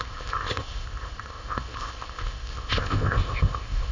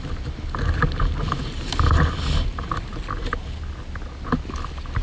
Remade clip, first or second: first